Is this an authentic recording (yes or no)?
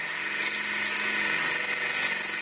yes